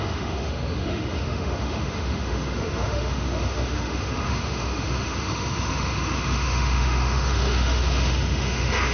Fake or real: fake